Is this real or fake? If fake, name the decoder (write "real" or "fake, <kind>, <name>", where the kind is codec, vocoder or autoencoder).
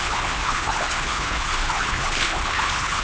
fake, codec, HILCodec